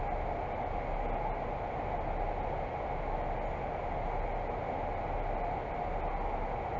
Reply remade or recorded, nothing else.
recorded